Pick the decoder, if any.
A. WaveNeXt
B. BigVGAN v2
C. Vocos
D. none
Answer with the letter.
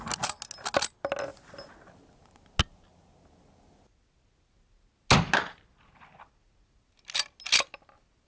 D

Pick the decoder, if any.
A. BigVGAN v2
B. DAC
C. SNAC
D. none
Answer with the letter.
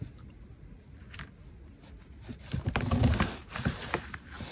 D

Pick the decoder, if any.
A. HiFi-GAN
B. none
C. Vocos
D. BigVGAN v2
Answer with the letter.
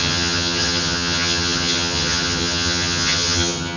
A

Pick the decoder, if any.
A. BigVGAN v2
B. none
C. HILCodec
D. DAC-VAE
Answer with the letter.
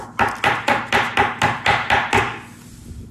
B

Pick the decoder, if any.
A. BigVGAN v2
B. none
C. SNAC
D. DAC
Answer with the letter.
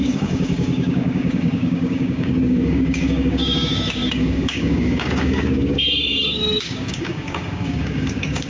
D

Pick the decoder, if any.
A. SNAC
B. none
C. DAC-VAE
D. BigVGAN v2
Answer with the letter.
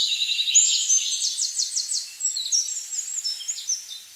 B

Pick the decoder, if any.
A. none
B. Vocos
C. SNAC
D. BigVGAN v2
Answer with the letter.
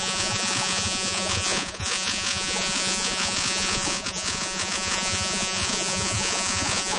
B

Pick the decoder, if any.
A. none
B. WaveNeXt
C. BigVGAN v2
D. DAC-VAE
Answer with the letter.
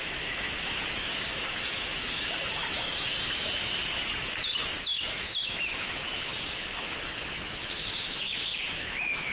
D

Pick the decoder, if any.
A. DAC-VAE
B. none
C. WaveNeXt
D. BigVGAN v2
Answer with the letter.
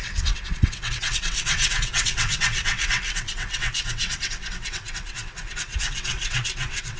C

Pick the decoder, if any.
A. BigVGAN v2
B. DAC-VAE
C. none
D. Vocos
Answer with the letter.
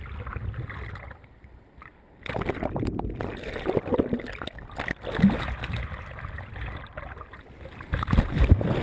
C